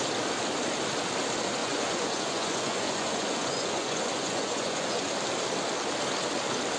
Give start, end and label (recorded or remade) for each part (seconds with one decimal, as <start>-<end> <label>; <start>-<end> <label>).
0.0-1.6 recorded; 1.6-5.1 remade; 5.1-6.8 recorded